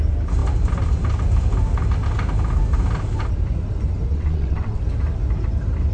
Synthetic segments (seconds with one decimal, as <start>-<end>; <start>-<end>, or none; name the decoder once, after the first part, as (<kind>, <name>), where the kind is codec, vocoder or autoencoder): 4.1-4.8 (vocoder, WaveNeXt)